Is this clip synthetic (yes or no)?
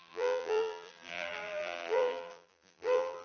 yes